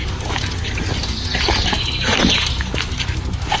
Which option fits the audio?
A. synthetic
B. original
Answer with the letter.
B